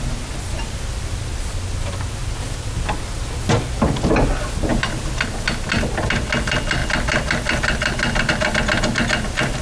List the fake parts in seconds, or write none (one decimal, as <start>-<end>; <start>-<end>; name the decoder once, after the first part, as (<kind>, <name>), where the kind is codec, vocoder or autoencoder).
none